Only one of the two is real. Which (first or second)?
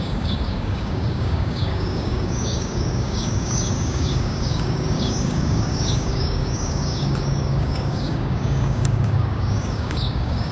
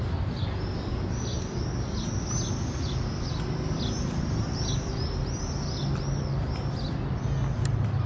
second